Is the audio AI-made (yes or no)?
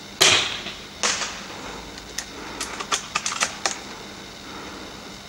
no